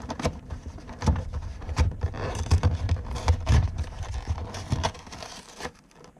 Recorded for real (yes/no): no